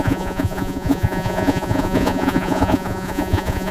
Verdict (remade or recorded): remade